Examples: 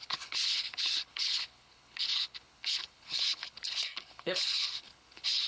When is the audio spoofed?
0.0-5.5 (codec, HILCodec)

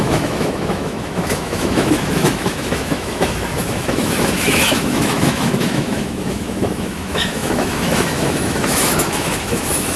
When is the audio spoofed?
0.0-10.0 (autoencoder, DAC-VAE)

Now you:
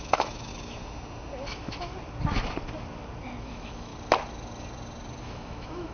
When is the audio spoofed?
0.0-0.5 (autoencoder, DAC-VAE); 1.5-1.9; 3.4-3.9; 5.2-5.9

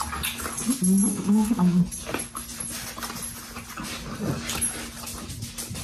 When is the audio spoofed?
1.1-1.8 (codec, SNAC)